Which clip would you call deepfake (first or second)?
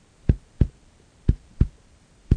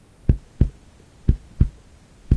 first